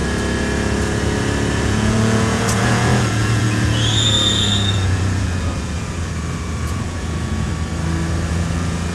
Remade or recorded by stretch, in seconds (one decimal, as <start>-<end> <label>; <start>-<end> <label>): 0.0-1.6 recorded; 1.6-7.5 remade; 7.5-8.3 recorded; 8.3-8.9 remade